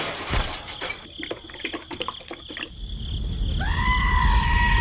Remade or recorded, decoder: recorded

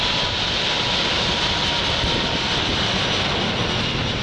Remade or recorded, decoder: recorded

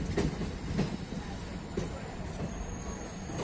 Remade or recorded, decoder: recorded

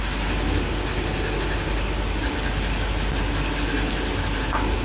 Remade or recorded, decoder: recorded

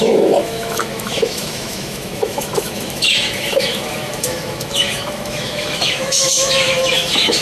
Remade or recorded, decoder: remade, autoencoder, DAC-VAE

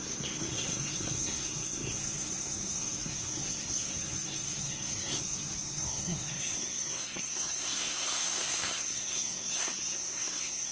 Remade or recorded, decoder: remade, codec, SNAC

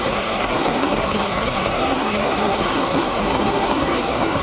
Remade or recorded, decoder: remade, codec, SNAC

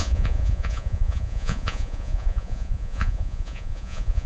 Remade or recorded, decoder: remade, vocoder, Vocos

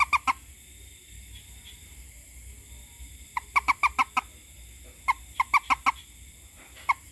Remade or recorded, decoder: recorded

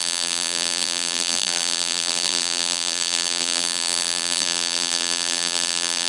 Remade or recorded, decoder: remade, vocoder, BigVGAN v2